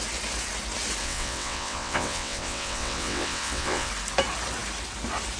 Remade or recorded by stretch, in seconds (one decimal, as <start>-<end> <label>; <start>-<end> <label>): 0.0-1.0 recorded; 1.0-3.9 remade; 3.9-5.4 recorded